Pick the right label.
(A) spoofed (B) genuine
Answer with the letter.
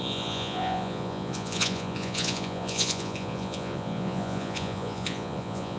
A